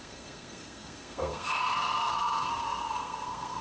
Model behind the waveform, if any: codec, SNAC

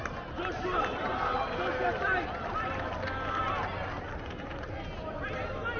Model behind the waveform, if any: none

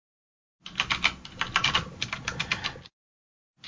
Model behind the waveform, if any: none